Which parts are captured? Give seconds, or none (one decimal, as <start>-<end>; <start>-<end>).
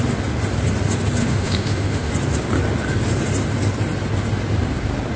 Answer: 0.0-1.2; 2.1-5.2